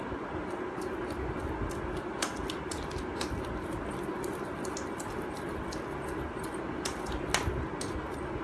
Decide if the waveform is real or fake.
real